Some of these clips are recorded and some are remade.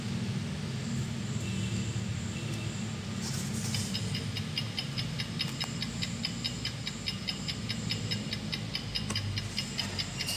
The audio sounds recorded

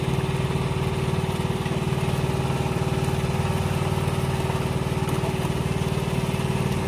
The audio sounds recorded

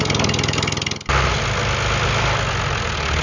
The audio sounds recorded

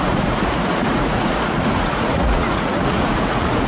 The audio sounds remade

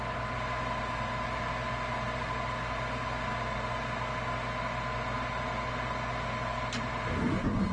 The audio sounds recorded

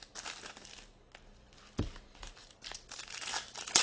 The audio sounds recorded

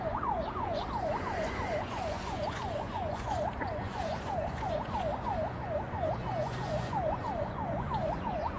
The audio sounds remade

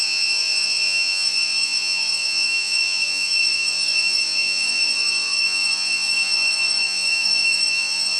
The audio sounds remade